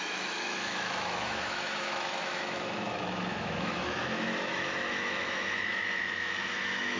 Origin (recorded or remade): remade